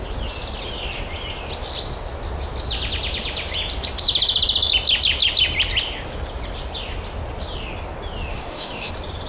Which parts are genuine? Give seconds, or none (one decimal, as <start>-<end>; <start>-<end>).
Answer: 0.0-8.3; 8.9-9.3